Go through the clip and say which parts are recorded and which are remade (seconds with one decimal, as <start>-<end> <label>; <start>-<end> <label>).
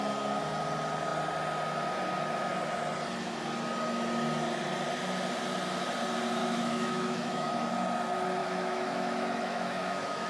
0.0-6.4 recorded; 6.4-7.7 remade; 7.7-8.4 recorded; 8.4-10.3 remade